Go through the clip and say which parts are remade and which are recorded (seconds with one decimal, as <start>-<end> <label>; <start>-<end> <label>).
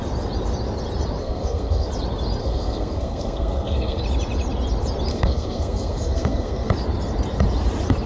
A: 0.0-1.2 recorded; 1.2-1.9 remade; 1.9-2.4 recorded; 2.4-4.0 remade; 4.0-5.1 recorded; 5.1-6.7 remade; 6.7-8.1 recorded